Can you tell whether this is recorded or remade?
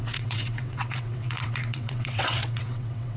remade